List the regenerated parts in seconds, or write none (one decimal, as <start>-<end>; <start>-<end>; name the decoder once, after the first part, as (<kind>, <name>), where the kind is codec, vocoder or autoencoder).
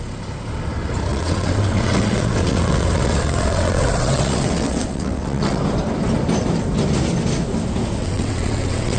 1.1-5.6 (vocoder, WaveNeXt); 8.0-9.0